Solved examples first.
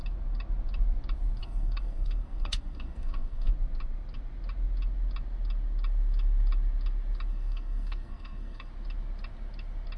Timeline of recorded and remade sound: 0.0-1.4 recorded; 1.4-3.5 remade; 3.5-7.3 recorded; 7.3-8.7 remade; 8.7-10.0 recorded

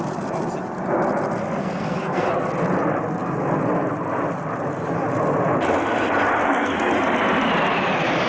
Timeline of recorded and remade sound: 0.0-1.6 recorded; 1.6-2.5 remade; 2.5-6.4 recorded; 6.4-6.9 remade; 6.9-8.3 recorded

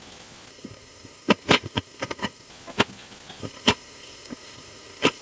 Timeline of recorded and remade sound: 0.0-0.5 recorded; 0.5-2.5 remade; 2.5-3.4 recorded; 3.4-5.2 remade

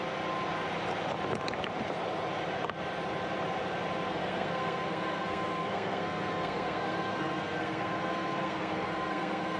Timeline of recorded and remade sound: 0.0-4.1 recorded; 4.1-9.6 remade